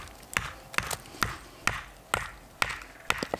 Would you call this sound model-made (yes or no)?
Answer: no